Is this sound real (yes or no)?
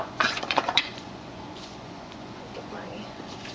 no